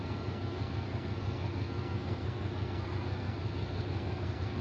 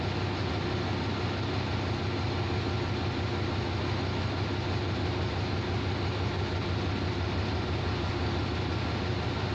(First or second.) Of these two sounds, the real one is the second